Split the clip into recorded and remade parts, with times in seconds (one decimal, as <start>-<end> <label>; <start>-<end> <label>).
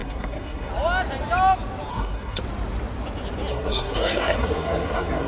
0.0-0.7 remade; 0.7-1.9 recorded; 1.9-2.4 remade; 2.4-3.5 recorded; 3.5-5.3 remade